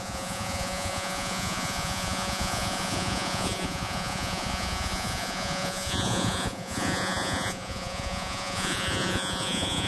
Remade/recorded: remade